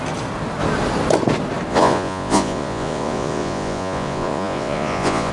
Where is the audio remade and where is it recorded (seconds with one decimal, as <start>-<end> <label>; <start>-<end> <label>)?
0.0-1.7 recorded; 1.7-5.3 remade